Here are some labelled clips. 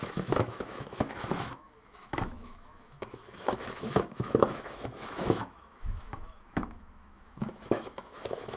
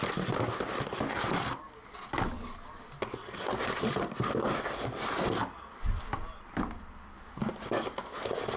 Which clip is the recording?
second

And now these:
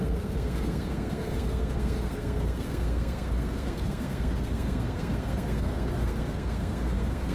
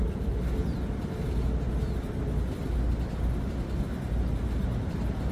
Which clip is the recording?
second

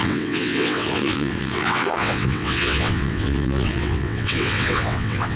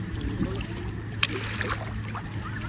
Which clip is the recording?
second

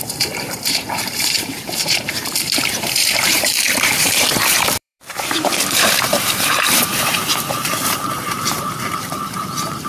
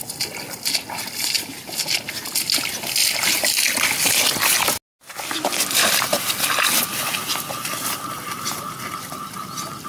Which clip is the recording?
second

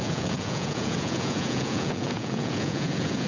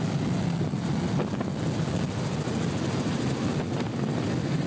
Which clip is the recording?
second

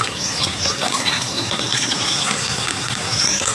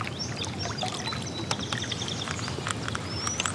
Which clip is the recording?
second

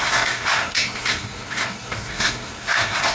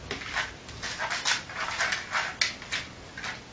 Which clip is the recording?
second